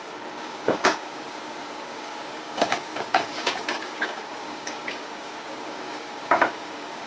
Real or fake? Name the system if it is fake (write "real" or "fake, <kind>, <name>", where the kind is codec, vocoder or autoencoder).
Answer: fake, codec, DAC